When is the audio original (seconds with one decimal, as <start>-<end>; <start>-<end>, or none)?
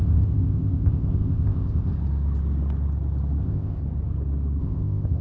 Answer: 1.9-3.4; 3.8-4.6